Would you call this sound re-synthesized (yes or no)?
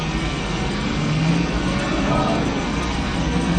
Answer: yes